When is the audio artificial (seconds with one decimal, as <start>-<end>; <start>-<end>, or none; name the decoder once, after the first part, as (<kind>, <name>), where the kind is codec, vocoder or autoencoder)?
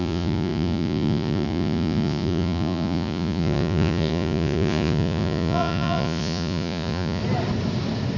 0.0-7.2 (vocoder, Vocos)